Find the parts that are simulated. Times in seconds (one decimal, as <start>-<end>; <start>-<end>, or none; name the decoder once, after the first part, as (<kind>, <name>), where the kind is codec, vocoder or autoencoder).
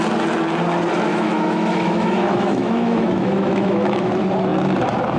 1.1-4.1 (autoencoder, DAC-VAE)